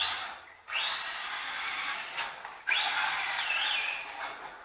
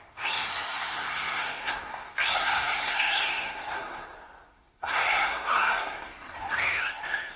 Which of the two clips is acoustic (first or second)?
first